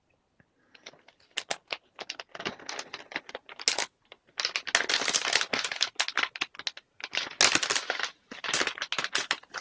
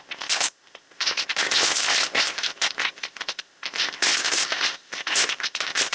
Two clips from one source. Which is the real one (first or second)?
first